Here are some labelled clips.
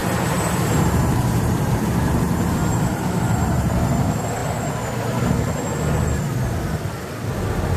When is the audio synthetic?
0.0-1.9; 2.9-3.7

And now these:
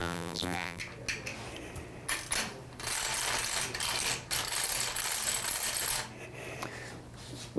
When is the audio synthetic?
0.0-0.8

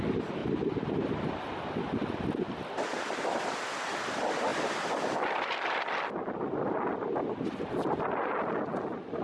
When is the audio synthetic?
0.4-1.1

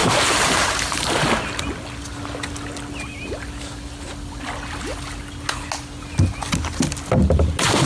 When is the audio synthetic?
0.0-1.4

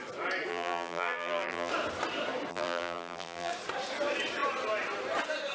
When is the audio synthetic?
0.5-1.7; 2.5-3.5